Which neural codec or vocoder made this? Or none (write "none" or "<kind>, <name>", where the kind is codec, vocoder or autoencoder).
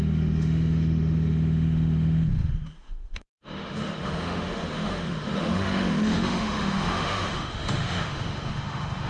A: autoencoder, DAC-VAE